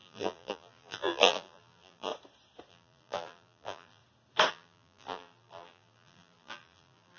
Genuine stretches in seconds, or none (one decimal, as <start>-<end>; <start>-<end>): 2.1-2.7; 4.0-4.5